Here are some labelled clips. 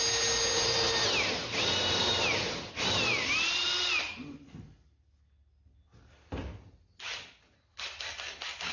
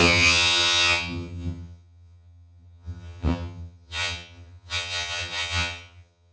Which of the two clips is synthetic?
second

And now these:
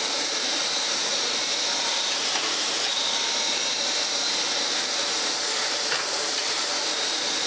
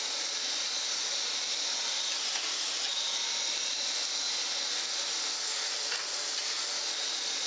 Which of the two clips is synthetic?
first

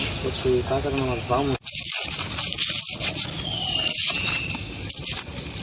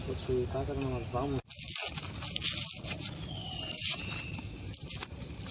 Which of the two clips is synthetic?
first